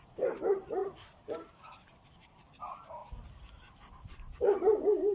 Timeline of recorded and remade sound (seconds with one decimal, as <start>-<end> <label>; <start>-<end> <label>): 0.0-3.0 remade; 3.0-4.6 recorded; 4.6-5.1 remade